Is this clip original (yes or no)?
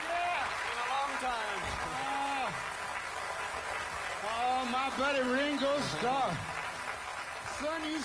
yes